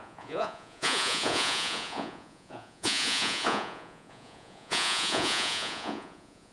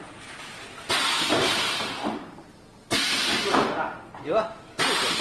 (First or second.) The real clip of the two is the second